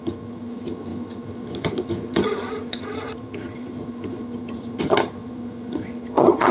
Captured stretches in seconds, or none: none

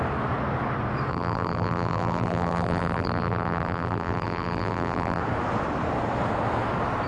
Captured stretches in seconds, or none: 0.0-1.1; 5.2-7.1

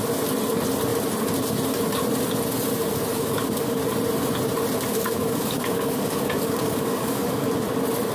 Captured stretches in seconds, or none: 0.0-3.1; 3.8-4.9; 7.5-8.1

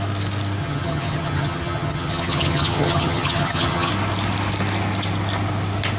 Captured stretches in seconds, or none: 0.0-0.6; 3.9-6.0

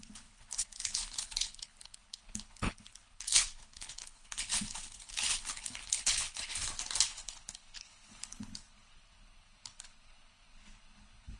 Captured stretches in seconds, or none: 6.6-7.1

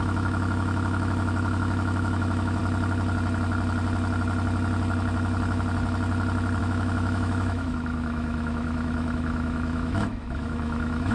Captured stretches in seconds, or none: 2.6-6.6

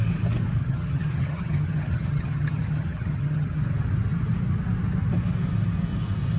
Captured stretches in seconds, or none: 0.0-0.6; 3.6-6.4

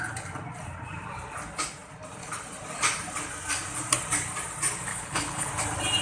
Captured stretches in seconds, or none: 0.0-4.9; 5.5-6.0